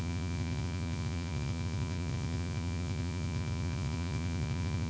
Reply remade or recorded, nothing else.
remade